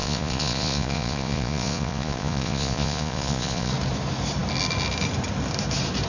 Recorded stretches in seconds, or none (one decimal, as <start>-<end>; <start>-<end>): 3.7-6.1